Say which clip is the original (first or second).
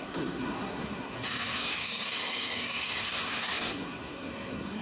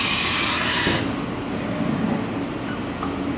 second